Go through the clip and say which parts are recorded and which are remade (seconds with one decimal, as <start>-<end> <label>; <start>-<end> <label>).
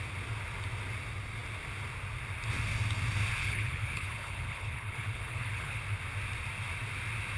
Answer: 0.0-3.4 recorded; 3.4-5.8 remade; 5.8-7.4 recorded